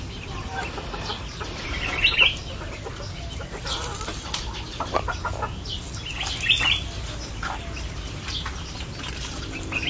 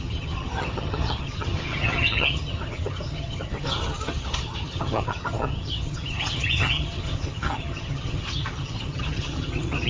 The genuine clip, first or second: first